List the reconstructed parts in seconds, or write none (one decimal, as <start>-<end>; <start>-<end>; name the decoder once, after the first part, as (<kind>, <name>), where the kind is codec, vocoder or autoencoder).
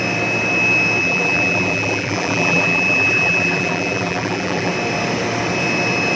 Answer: 1.0-4.7 (vocoder, BigVGAN v2)